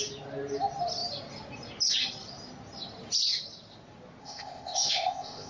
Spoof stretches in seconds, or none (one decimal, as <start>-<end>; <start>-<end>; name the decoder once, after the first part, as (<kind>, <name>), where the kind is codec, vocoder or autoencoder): 4.2-5.5 (codec, ZipCodec)